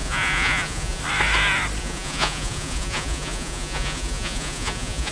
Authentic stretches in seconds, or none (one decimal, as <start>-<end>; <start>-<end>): 1.0-1.8